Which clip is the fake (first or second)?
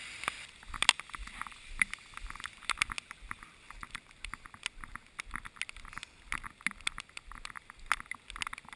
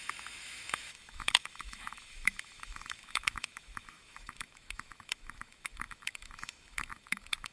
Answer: second